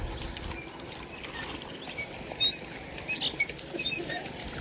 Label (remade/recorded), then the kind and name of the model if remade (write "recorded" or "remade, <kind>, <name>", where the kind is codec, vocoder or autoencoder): recorded